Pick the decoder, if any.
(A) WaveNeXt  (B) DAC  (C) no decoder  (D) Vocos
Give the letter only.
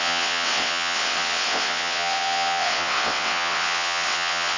A